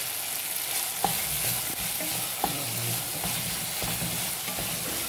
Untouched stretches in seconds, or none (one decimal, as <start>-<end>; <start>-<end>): 0.0-5.1